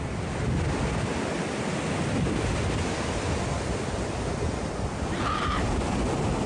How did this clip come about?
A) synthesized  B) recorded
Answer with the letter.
B